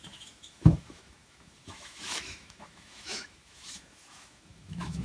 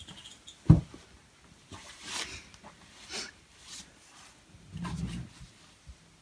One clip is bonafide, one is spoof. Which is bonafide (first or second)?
second